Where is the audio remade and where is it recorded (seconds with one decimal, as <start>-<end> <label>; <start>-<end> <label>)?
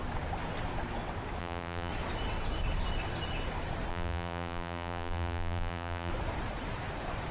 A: 0.0-1.4 recorded; 1.4-1.9 remade; 1.9-3.9 recorded; 3.9-6.1 remade; 6.1-7.3 recorded